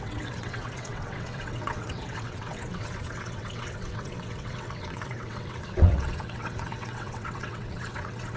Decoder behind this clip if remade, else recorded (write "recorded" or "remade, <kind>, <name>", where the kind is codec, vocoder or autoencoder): remade, vocoder, WaveNeXt